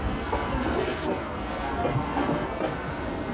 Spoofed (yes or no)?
yes